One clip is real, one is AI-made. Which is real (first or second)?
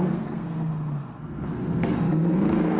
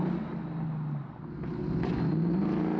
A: second